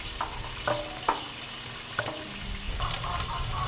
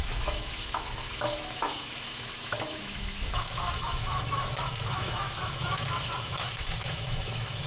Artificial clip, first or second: second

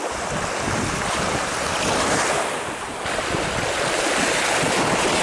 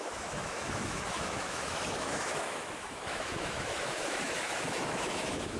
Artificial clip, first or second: second